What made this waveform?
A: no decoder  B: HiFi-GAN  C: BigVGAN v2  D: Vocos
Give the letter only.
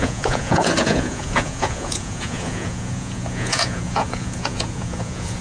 D